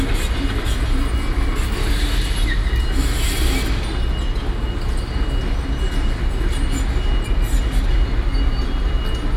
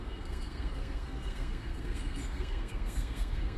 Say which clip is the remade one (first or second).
second